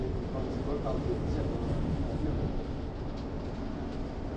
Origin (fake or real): real